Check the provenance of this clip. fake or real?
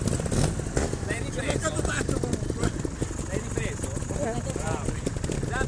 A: real